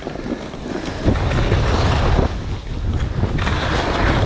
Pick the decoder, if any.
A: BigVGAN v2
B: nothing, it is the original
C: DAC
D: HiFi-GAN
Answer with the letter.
B